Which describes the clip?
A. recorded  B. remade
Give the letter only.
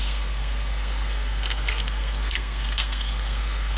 B